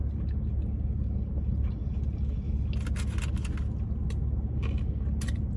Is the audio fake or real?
real